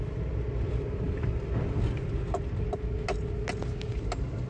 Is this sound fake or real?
real